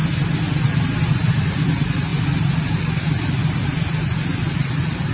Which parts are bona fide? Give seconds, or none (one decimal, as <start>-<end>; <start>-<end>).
0.0-5.1